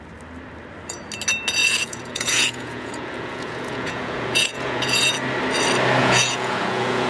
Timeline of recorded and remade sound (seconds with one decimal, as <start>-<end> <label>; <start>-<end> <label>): 0.0-1.6 recorded; 1.6-5.1 remade; 5.1-6.0 recorded; 6.0-7.1 remade